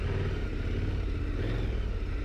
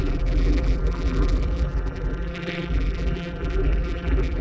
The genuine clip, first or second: first